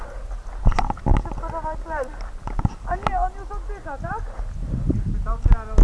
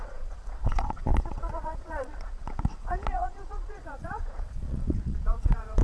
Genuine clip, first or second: first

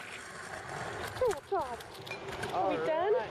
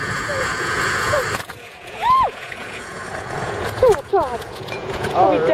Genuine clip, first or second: first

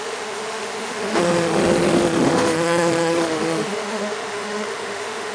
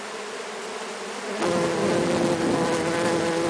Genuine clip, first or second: second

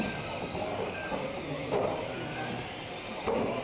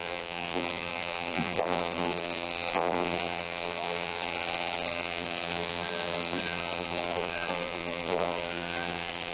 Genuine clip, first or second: first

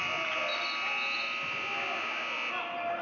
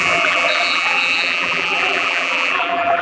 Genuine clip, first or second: first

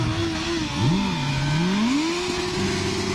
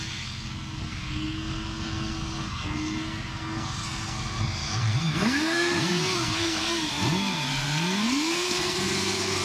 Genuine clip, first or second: first